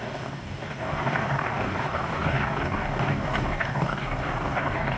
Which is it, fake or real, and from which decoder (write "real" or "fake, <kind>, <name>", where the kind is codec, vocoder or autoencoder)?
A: fake, codec, DAC